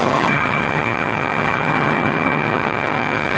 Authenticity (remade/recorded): remade